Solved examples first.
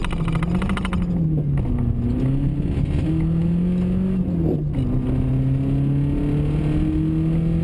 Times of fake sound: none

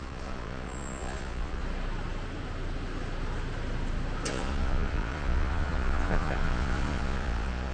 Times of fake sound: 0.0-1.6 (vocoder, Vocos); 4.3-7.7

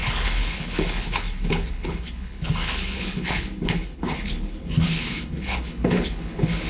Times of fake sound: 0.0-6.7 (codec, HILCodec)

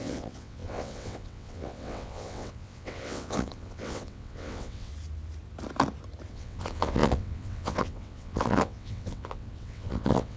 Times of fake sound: 0.0-4.9 (vocoder, WaveNeXt); 6.3-10.4

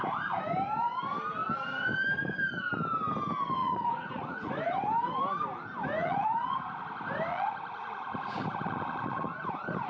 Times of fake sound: 3.6-4.5 (vocoder, Vocos); 6.0-6.8; 7.3-9.5

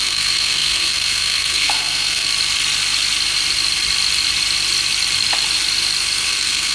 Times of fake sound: 0.0-2.3 (codec, SNAC); 6.3-6.7

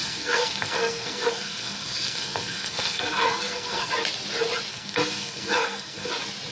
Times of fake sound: 0.0-3.9 (codec, SNAC); 4.7-6.1

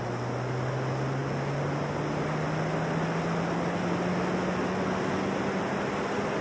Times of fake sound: none